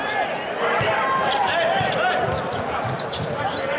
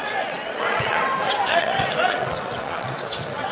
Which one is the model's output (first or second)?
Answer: second